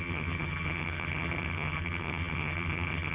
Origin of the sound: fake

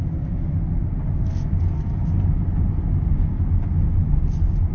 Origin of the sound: real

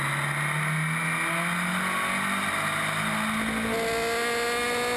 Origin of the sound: real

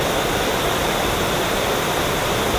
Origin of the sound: real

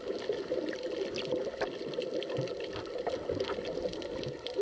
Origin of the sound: real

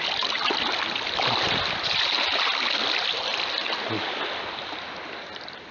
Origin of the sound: real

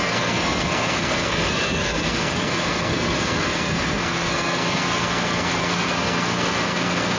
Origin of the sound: fake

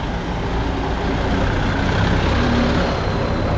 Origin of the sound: real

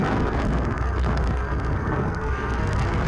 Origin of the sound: fake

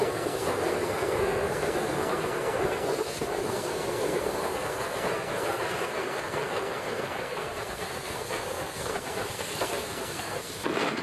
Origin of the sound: fake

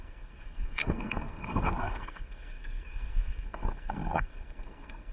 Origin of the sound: fake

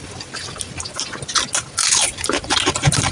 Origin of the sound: real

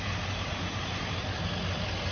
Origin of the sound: real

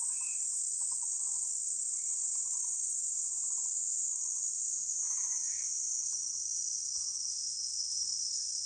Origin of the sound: fake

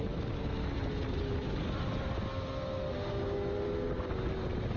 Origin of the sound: real